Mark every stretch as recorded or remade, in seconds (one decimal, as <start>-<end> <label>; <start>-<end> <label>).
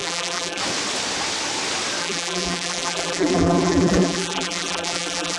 0.0-0.6 remade; 0.6-2.0 recorded; 2.0-5.4 remade